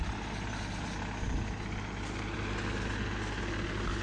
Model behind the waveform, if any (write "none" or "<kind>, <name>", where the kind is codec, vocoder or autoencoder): none